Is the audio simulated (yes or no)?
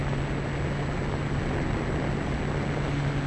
no